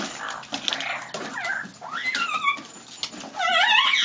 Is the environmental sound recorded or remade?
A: recorded